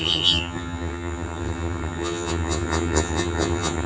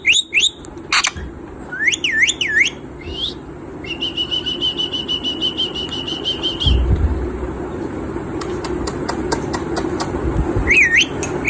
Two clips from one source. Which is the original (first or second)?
second